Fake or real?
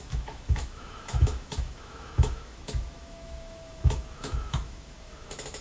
fake